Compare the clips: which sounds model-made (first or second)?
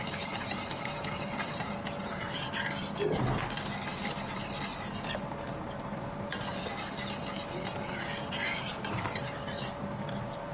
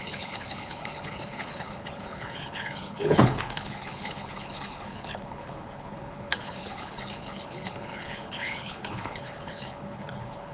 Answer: second